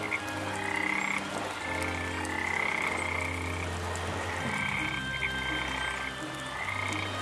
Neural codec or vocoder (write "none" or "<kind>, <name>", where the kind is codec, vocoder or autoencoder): none